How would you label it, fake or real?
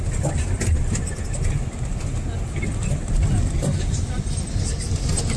real